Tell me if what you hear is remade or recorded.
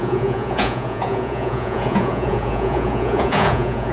remade